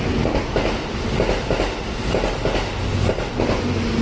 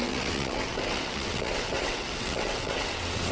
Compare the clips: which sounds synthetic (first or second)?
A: second